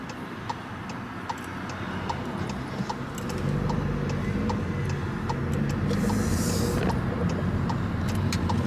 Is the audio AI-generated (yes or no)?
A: no